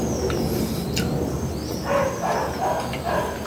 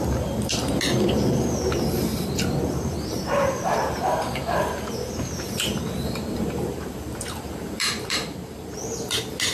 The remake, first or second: second